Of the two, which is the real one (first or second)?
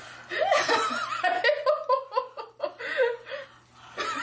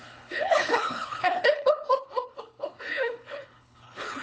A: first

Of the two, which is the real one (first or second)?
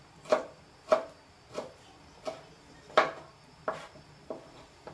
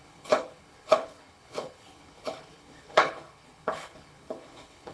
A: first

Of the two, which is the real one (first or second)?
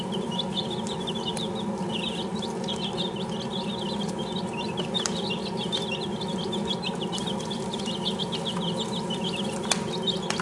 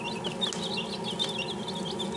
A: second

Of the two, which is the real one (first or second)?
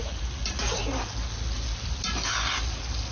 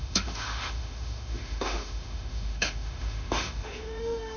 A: first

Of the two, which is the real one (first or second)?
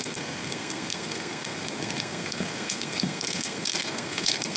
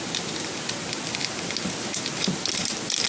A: second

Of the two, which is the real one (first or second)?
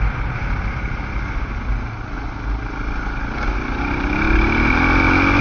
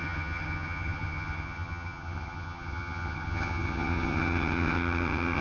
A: first